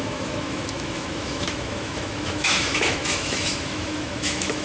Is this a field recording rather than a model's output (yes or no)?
no